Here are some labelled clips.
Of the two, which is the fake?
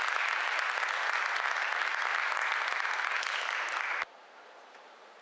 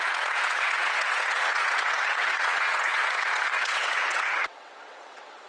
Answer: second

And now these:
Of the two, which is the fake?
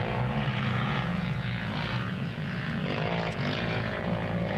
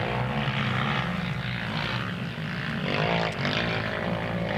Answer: first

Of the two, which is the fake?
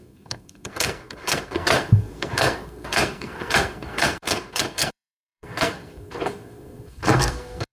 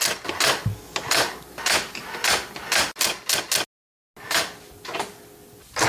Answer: first